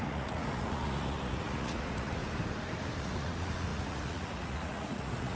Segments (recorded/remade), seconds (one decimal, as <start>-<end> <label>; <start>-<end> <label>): 0.0-2.2 remade; 2.2-3.0 recorded; 3.0-5.4 remade